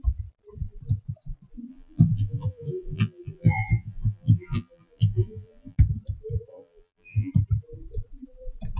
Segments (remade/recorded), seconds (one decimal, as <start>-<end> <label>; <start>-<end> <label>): 0.0-1.7 recorded; 1.7-5.8 remade; 5.8-6.5 recorded; 6.5-7.3 remade; 7.3-8.8 recorded